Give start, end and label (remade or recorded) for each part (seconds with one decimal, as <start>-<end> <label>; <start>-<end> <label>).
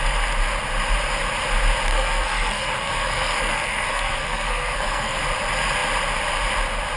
0.0-1.9 recorded; 1.9-5.2 remade; 5.2-7.0 recorded